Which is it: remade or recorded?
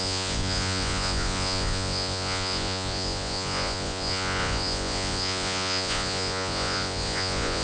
remade